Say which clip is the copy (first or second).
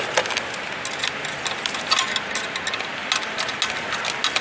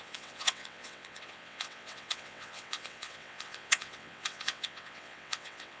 second